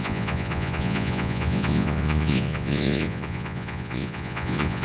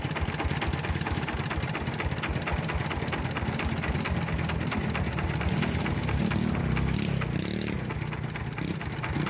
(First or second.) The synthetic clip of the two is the first